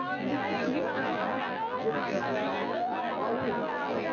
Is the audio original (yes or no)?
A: no